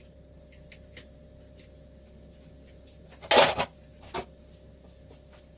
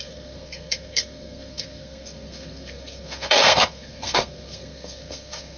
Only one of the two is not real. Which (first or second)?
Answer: second